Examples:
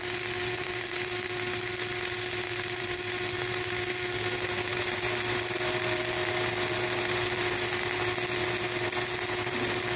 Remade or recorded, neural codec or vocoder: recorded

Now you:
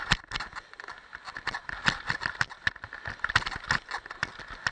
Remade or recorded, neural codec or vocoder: recorded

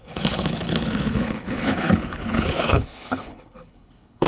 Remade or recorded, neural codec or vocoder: remade, codec, HILCodec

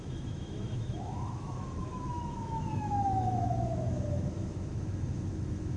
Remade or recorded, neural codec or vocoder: remade, autoencoder, DAC-VAE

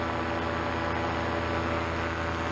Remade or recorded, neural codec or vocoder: recorded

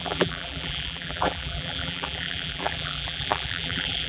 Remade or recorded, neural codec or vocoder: remade, vocoder, BigVGAN v2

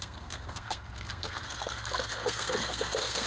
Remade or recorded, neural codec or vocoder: remade, codec, SNAC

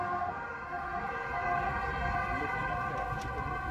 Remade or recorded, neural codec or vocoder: recorded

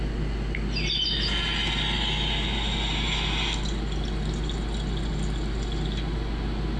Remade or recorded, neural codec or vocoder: recorded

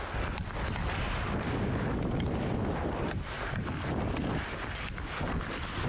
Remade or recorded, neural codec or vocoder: recorded